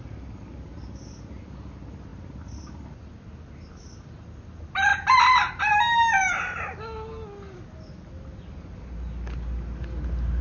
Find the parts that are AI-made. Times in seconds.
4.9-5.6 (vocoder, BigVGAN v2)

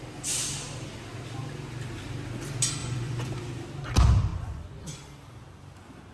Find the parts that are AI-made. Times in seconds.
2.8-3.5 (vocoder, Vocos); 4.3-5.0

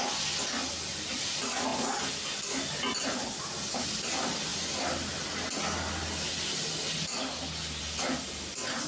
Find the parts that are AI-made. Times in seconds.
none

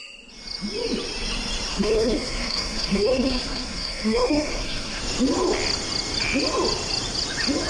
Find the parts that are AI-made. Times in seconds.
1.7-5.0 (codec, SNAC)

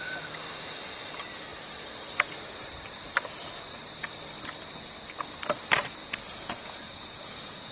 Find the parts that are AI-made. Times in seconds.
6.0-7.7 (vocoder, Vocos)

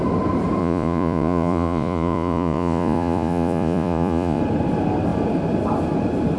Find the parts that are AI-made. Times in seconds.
0.6-4.4 (vocoder, Vocos)